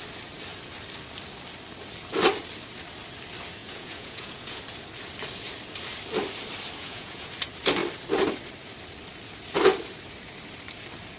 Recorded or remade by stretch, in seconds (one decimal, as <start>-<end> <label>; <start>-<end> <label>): 0.0-3.6 recorded; 3.6-4.6 remade; 4.6-6.8 recorded; 6.8-7.3 remade; 7.3-11.2 recorded